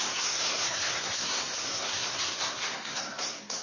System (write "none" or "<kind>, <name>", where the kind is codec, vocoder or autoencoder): codec, SNAC